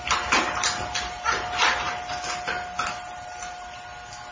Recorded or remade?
recorded